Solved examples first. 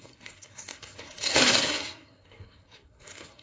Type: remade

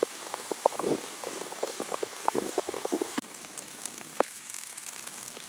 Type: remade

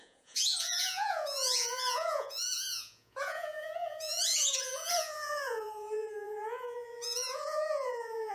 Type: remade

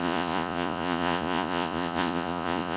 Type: remade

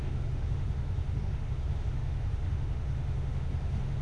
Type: remade